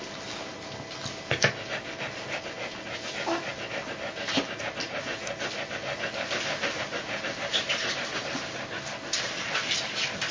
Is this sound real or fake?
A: real